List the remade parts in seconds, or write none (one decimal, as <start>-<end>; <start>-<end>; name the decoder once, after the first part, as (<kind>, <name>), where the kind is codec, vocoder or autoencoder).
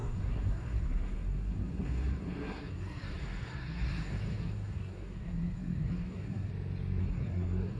0.0-6.5 (codec, SNAC); 7.0-7.8